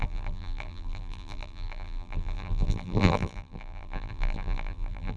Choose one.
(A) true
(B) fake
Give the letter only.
B